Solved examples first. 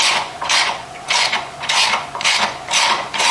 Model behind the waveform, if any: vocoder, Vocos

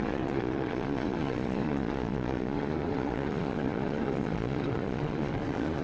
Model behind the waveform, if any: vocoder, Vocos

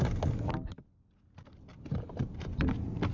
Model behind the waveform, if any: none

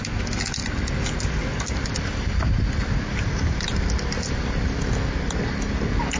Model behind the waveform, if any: none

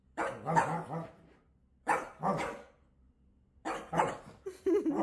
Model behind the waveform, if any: none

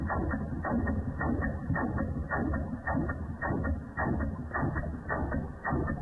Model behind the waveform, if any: none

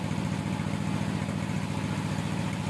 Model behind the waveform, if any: none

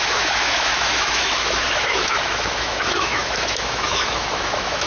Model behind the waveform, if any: autoencoder, DAC-VAE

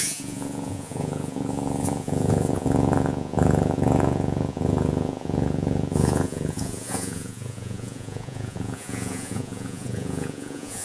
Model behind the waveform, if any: vocoder, Vocos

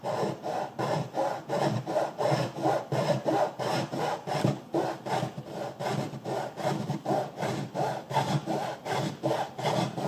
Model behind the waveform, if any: none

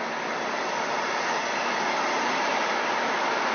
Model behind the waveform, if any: none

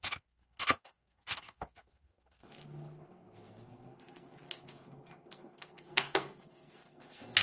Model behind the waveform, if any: codec, SNAC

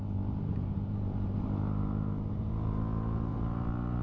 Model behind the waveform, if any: vocoder, BigVGAN v2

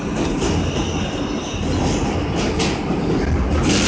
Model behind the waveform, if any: none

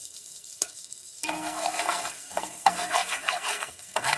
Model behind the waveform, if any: codec, SNAC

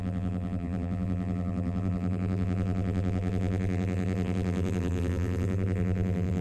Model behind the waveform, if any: vocoder, BigVGAN v2